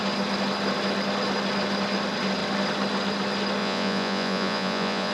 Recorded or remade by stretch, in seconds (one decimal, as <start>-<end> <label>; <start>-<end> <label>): 0.0-3.6 recorded; 3.6-5.1 remade